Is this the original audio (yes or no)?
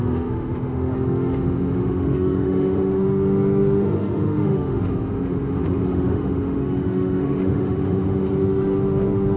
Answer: no